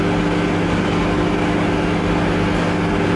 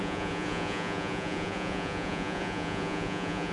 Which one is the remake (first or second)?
second